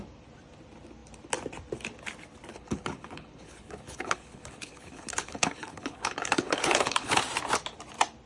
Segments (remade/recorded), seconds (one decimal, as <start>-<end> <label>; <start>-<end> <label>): 0.0-2.5 recorded; 2.5-7.2 remade; 7.2-8.3 recorded